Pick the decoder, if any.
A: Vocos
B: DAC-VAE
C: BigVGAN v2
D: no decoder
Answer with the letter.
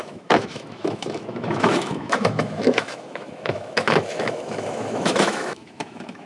B